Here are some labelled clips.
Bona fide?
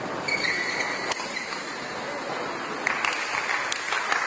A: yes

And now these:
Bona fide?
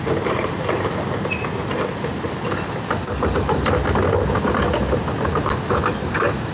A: yes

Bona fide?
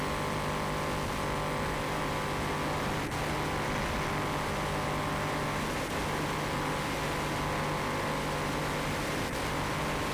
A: yes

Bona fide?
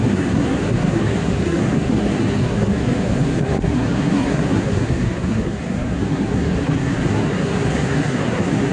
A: no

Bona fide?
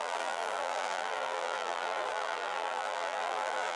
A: no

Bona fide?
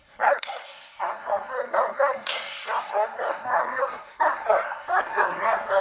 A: no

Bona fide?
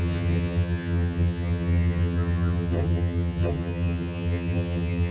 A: no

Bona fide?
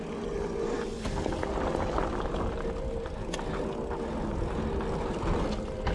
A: yes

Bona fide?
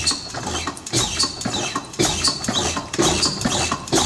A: yes